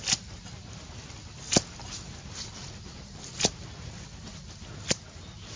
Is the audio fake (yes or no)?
no